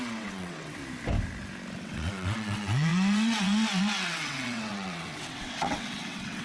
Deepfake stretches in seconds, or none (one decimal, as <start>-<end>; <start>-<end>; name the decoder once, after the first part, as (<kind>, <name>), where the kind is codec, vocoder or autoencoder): 0.0-0.8 (vocoder, WaveNeXt); 1.8-6.4